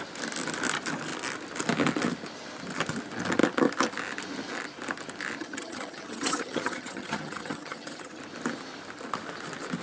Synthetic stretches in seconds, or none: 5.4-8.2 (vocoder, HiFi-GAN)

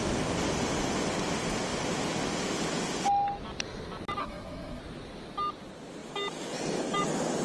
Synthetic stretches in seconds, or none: 4.2-4.8 (codec, SNAC)